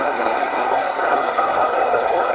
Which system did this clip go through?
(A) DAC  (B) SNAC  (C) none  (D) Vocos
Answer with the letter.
B